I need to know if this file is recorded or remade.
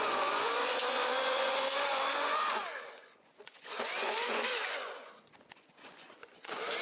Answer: remade